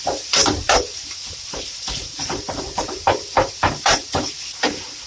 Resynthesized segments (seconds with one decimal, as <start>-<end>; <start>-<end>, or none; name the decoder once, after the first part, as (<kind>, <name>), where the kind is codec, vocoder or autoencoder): 0.0-5.1 (vocoder, BigVGAN v2)